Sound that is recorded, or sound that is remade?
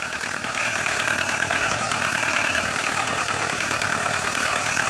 remade